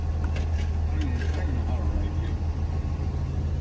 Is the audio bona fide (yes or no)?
yes